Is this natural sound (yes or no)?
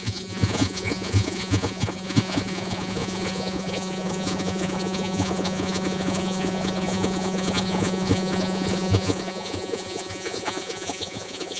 no